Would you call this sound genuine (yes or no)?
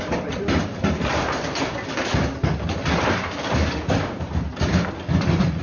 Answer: yes